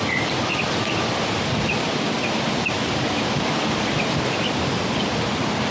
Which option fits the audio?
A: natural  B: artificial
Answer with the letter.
A